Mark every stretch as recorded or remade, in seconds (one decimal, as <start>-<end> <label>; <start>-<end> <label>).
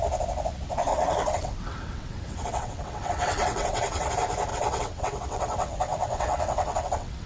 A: 0.0-0.9 recorded; 0.9-4.1 remade; 4.1-4.5 recorded; 4.5-7.3 remade